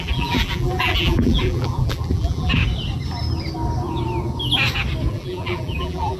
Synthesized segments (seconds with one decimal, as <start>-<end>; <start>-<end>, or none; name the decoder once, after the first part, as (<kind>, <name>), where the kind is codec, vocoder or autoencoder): 0.0-2.6 (vocoder, BigVGAN v2); 5.1-6.2